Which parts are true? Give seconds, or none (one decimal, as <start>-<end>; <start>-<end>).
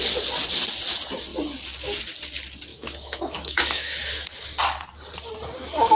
0.0-2.7; 4.1-5.9